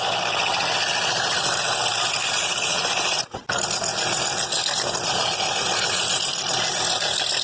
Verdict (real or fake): real